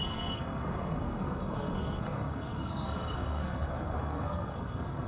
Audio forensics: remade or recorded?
remade